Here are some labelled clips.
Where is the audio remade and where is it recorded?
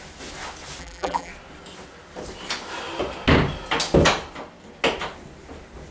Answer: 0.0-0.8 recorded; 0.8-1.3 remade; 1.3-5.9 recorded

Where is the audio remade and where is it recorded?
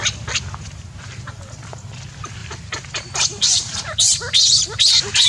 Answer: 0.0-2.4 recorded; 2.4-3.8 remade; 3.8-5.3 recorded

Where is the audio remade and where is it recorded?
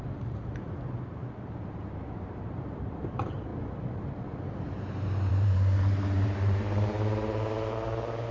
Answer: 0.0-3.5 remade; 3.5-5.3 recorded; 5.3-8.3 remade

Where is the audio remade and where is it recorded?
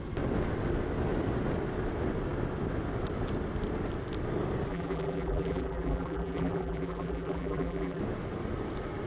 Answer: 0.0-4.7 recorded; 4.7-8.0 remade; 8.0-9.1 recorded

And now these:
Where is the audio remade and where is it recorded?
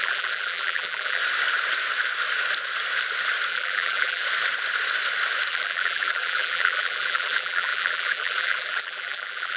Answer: 0.0-1.2 remade; 1.2-3.5 recorded; 3.5-4.2 remade; 4.2-5.5 recorded; 5.5-9.6 remade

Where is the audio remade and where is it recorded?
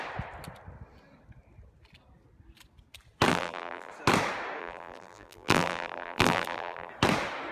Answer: 0.0-3.3 recorded; 3.3-3.9 remade; 3.9-4.6 recorded; 4.6-6.9 remade; 6.9-7.5 recorded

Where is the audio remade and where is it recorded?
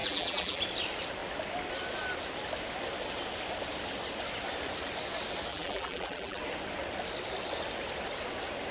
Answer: 0.0-0.6 remade; 0.6-5.5 recorded; 5.5-6.4 remade; 6.4-8.7 recorded